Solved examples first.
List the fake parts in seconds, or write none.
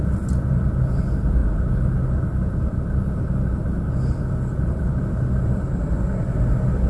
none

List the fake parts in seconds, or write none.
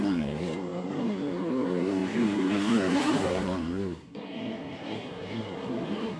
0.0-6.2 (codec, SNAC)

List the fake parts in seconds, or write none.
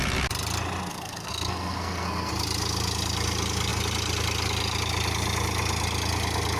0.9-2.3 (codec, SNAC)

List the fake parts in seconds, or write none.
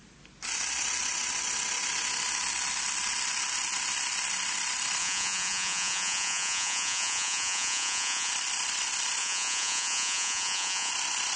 5.0-8.3 (vocoder, Vocos); 9.2-10.9